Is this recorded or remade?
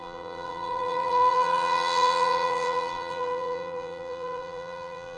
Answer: remade